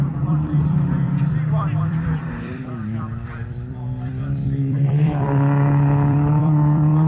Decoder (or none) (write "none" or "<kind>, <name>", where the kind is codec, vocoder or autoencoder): vocoder, BigVGAN v2